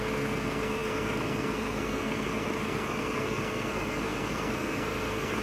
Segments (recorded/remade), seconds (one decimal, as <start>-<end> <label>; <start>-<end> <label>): 0.0-5.4 remade